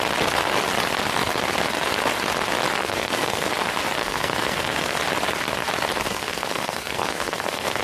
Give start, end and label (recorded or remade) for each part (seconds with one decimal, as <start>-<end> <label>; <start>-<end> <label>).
0.0-2.8 recorded; 2.8-3.5 remade; 3.5-4.0 recorded; 4.0-5.0 remade; 5.0-6.0 recorded; 6.0-7.8 remade